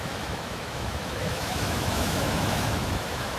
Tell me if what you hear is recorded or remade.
remade